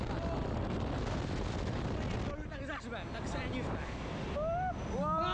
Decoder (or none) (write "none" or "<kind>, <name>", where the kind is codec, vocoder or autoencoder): none